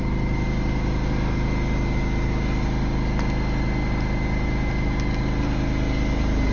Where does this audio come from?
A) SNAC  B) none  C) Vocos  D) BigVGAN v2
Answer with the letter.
B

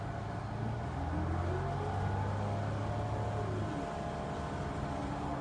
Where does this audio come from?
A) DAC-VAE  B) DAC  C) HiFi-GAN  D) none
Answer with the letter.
D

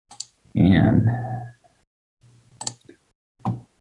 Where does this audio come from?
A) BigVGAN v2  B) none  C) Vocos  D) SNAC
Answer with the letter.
B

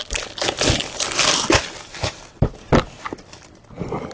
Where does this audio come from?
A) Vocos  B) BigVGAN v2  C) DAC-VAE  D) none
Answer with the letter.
B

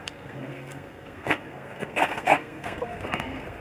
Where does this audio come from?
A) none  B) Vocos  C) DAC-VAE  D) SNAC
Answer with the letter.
D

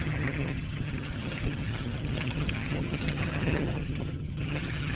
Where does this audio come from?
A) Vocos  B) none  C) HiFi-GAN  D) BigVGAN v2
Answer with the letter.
C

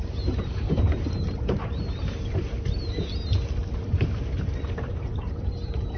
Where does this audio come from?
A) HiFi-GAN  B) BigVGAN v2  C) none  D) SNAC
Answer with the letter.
B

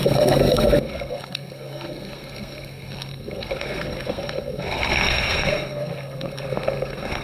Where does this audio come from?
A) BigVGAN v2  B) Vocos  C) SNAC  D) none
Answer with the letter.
C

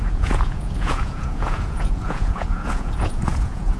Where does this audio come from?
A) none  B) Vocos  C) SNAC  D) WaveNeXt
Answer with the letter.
B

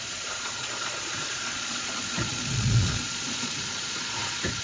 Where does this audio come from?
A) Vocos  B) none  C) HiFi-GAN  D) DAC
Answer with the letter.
A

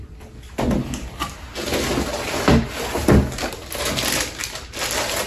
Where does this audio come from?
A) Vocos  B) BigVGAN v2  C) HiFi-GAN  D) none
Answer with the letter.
D